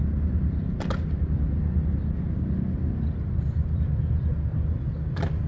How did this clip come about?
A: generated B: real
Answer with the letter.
B